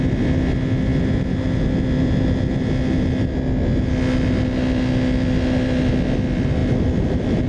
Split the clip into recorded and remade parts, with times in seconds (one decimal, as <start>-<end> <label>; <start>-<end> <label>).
0.0-7.5 recorded